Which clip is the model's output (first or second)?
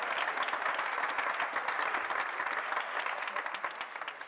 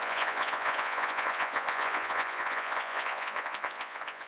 second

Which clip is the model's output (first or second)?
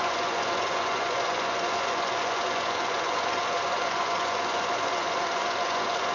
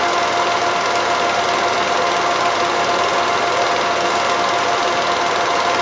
first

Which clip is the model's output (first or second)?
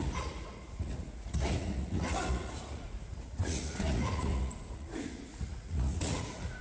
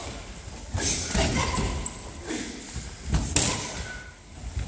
first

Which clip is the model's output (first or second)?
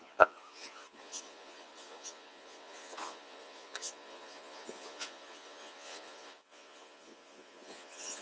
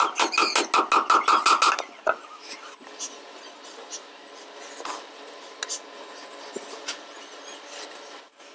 first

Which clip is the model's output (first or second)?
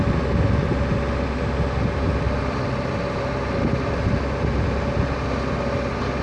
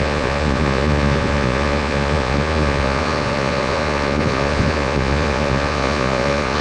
second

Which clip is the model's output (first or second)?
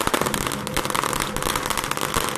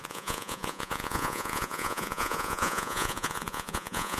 second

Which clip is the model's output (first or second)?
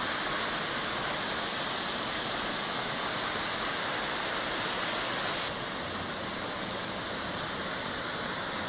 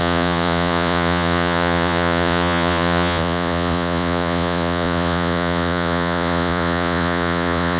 second